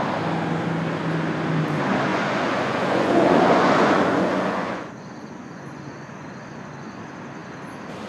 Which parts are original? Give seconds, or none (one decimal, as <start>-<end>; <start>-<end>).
0.0-2.1; 7.0-8.1

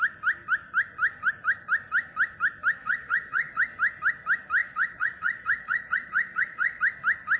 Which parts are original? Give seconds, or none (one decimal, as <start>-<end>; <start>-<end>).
0.0-2.8; 3.6-4.6; 6.8-7.4

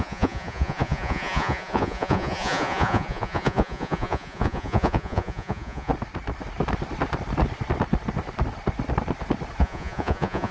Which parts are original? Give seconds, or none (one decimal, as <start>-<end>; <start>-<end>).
5.9-9.6

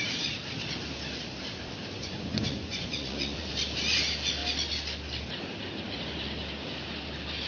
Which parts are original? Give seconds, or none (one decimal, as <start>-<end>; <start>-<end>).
0.0-2.0; 3.5-7.5